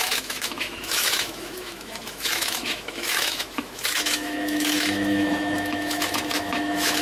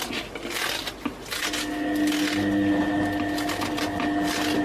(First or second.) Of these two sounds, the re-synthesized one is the first